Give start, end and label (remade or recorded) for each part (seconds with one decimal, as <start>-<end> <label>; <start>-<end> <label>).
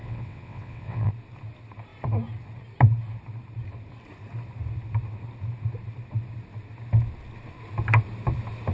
0.0-1.1 remade; 1.1-8.7 recorded